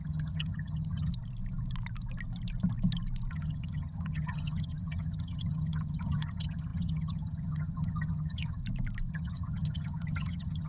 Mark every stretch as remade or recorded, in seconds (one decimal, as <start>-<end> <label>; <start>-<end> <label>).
0.0-1.1 remade; 1.1-3.3 recorded; 3.3-8.6 remade; 8.6-9.1 recorded; 9.1-10.7 remade